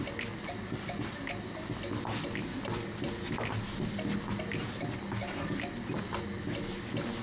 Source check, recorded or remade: recorded